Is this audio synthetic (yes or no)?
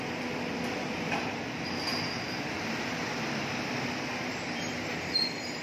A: no